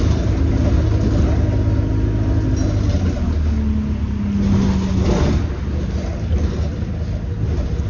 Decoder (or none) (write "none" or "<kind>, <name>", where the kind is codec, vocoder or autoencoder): none